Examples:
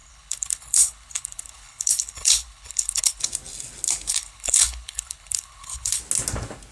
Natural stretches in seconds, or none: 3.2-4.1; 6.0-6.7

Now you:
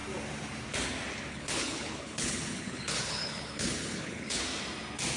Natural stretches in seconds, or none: 0.0-1.3; 4.4-5.2

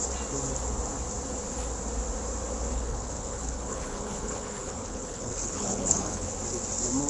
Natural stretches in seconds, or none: 0.0-2.7; 6.3-7.1

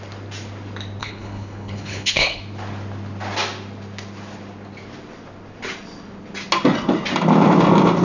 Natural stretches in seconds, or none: 0.0-1.0; 2.4-8.0